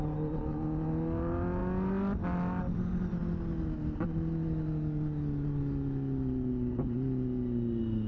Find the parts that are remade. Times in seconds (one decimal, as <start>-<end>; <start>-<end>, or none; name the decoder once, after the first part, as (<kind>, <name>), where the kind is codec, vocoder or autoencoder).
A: none